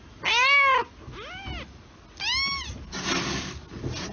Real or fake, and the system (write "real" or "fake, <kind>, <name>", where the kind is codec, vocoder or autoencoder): real